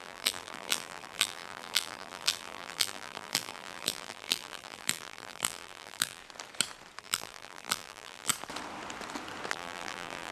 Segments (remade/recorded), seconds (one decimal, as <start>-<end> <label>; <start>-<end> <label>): 0.0-6.2 remade; 6.2-7.0 recorded; 7.0-8.3 remade; 8.3-9.5 recorded; 9.5-10.3 remade